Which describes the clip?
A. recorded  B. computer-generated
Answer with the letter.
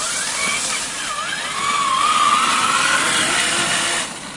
A